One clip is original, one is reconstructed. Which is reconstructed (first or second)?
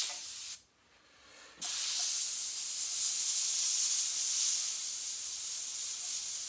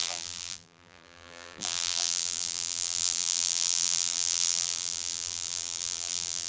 second